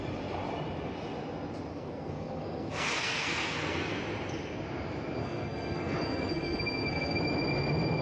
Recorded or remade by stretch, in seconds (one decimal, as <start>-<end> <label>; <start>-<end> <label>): 0.0-1.7 recorded; 1.7-4.0 remade; 4.0-5.2 recorded; 5.2-7.2 remade; 7.2-8.0 recorded